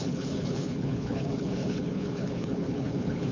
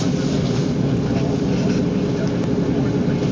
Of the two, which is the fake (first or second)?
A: first